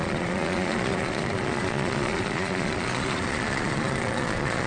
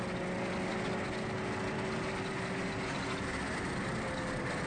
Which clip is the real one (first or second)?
second